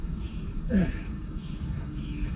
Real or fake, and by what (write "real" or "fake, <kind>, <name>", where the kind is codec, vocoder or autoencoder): fake, codec, DAC